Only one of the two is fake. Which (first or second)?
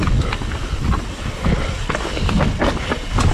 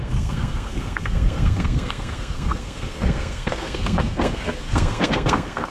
second